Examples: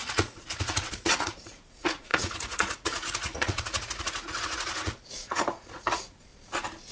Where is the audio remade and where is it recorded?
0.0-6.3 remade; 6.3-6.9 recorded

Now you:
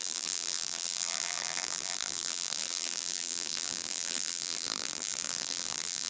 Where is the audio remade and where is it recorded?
0.0-6.1 remade

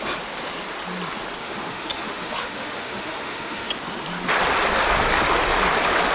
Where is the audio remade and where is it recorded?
0.0-1.4 recorded; 1.4-3.7 remade; 3.7-6.1 recorded

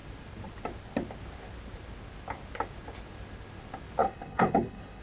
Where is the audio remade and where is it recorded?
0.0-4.0 recorded; 4.0-5.0 remade

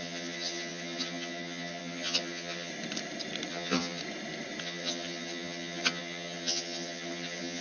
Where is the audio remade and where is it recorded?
0.0-2.7 remade; 2.7-3.5 recorded; 3.5-4.0 remade; 4.0-4.6 recorded; 4.6-7.6 remade

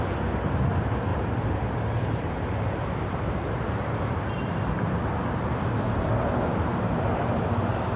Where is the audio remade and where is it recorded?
0.0-1.1 recorded; 1.1-5.5 remade; 5.5-8.0 recorded

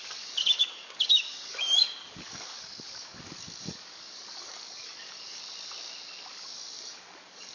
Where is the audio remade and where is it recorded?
0.0-5.4 remade; 5.4-6.3 recorded; 6.3-7.5 remade